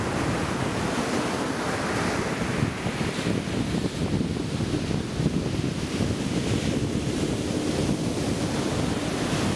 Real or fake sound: real